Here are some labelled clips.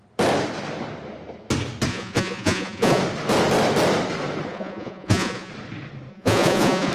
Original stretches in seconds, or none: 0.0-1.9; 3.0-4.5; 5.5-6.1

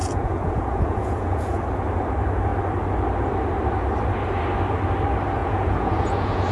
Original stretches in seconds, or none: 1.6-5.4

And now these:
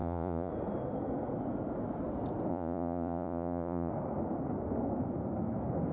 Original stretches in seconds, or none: 0.5-2.5; 3.9-5.9

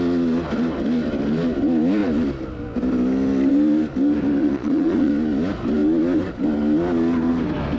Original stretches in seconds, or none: 0.0-4.4; 5.1-7.8